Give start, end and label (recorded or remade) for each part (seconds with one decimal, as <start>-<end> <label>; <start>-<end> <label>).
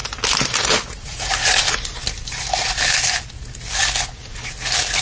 0.0-2.8 remade; 2.8-5.0 recorded